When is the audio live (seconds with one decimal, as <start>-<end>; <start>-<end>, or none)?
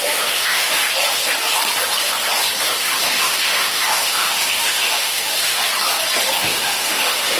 0.8-2.6; 5.6-6.4